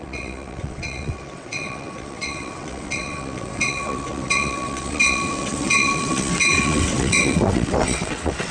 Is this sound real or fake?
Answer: fake